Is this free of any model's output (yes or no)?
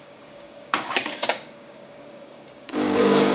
no